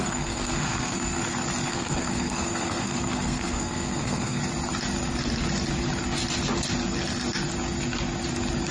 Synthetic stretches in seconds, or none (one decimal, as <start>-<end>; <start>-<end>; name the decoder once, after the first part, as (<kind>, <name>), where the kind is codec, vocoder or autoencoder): 0.0-1.2 (codec, SNAC); 1.7-4.4